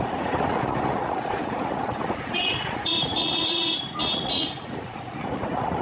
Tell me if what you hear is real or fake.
fake